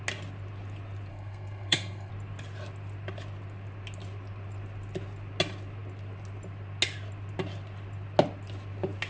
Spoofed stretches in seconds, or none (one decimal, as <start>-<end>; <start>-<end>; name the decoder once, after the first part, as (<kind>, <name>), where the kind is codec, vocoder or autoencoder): 1.1-2.1 (codec, SNAC)

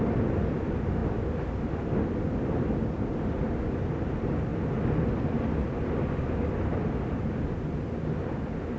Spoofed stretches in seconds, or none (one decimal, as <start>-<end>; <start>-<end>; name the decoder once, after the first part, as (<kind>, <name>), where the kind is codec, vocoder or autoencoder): 0.0-1.0 (vocoder, BigVGAN v2); 3.9-4.5; 6.3-8.8